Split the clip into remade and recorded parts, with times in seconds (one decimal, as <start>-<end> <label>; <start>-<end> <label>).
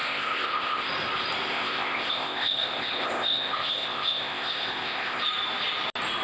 0.0-0.9 remade; 0.9-1.5 recorded; 1.5-5.2 remade; 5.2-6.2 recorded